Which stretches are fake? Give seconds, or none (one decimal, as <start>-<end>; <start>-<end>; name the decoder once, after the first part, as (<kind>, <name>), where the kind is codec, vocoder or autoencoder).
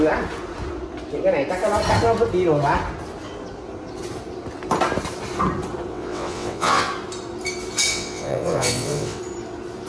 5.9-6.9 (vocoder, WaveNeXt); 7.9-9.2